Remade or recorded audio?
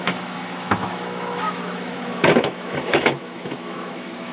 remade